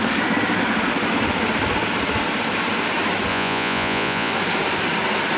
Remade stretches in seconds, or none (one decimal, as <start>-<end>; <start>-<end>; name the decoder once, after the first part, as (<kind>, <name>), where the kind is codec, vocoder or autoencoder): 3.3-4.3 (vocoder, Vocos)